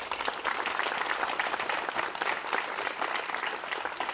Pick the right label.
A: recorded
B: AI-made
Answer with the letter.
A